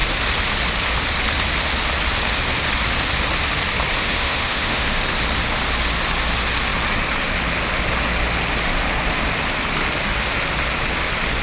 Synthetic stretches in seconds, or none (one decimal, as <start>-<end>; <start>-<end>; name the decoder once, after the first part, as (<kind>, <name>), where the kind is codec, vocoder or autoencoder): 4.0-5.0 (autoencoder, DAC-VAE)